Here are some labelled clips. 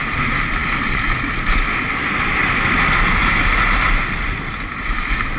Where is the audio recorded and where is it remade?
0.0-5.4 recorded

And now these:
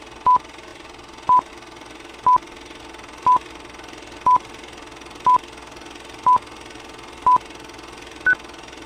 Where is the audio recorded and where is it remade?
0.0-8.9 recorded

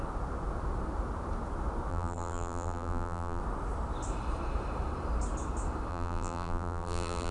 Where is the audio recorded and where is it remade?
0.0-1.9 recorded; 1.9-3.4 remade; 3.4-5.9 recorded; 5.9-7.3 remade

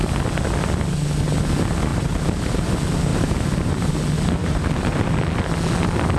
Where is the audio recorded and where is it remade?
0.0-1.9 recorded; 1.9-2.7 remade; 2.7-3.1 recorded; 3.1-3.9 remade; 3.9-4.4 recorded; 4.4-5.1 remade; 5.1-6.2 recorded

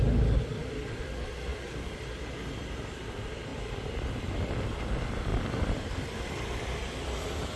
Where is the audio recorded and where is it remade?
0.0-1.5 remade; 1.5-2.2 recorded; 2.2-3.5 remade; 3.5-4.2 recorded; 4.2-5.3 remade; 5.3-5.9 recorded; 5.9-7.6 remade